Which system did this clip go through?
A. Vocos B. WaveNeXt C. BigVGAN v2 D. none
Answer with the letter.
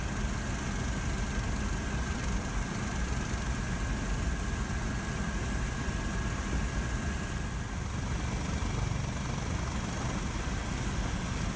D